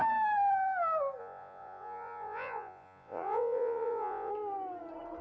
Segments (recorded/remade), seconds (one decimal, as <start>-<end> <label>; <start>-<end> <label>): 0.0-1.2 recorded; 1.2-4.3 remade; 4.3-5.2 recorded